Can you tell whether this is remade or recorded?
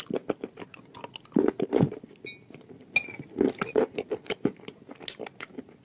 recorded